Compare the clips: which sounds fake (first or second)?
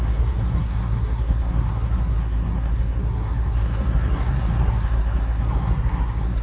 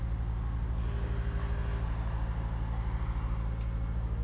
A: first